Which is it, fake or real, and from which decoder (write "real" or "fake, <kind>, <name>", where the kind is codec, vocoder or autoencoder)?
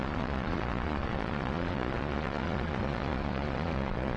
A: fake, vocoder, Vocos